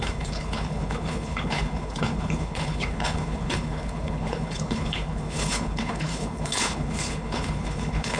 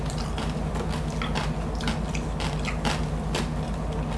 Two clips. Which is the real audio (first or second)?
second